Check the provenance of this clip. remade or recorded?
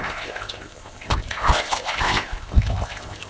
remade